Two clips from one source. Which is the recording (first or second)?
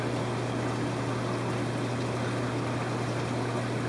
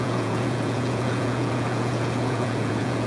first